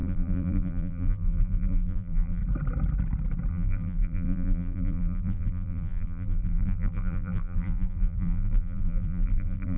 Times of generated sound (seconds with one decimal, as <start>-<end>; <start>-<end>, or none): 0.0-2.4; 3.5-9.8